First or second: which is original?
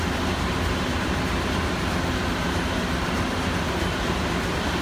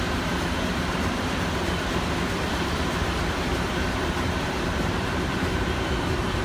first